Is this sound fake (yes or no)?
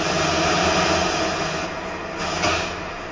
no